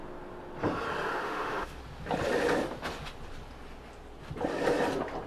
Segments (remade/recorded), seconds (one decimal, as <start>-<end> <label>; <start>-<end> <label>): 0.0-1.1 recorded; 1.1-1.8 remade; 1.8-5.3 recorded

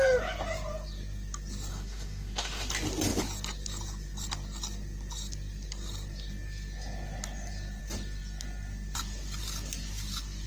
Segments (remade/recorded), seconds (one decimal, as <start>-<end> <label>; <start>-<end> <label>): 0.0-1.7 recorded; 1.7-2.7 remade; 2.7-10.5 recorded

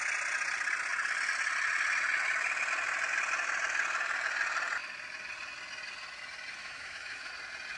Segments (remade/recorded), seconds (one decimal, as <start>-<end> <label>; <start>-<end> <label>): 0.0-6.6 recorded; 6.6-7.3 remade; 7.3-7.8 recorded

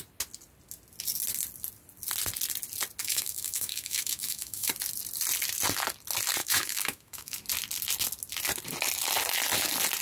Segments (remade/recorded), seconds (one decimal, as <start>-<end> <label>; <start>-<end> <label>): 0.0-3.0 recorded; 3.0-4.7 remade; 4.7-6.4 recorded; 6.4-7.4 remade; 7.4-10.0 recorded

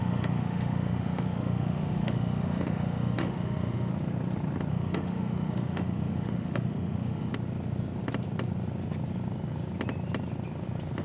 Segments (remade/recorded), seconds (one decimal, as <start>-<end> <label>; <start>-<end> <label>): 0.0-3.9 remade; 3.9-4.7 recorded; 4.7-7.3 remade; 7.3-11.0 recorded

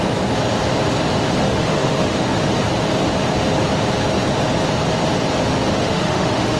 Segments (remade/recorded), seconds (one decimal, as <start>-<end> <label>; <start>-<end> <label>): 0.0-1.4 recorded; 1.4-2.5 remade; 2.5-5.8 recorded; 5.8-6.6 remade

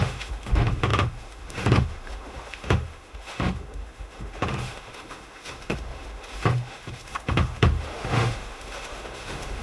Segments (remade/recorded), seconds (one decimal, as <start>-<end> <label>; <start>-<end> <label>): 0.0-9.6 remade

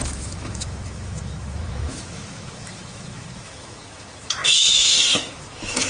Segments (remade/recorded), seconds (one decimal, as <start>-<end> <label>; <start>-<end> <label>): 0.0-5.9 remade